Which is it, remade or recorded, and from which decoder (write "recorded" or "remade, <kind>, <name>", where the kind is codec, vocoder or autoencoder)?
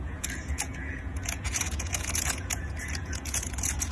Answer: remade, vocoder, Vocos